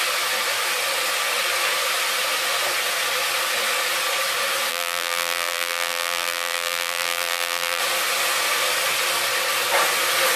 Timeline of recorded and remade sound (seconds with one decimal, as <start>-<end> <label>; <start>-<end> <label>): 0.0-4.7 recorded; 4.7-7.8 remade; 7.8-10.4 recorded